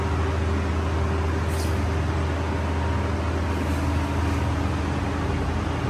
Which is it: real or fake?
real